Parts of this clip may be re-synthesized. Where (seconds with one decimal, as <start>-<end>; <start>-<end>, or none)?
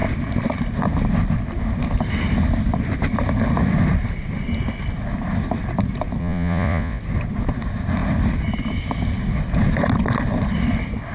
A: 6.2-7.0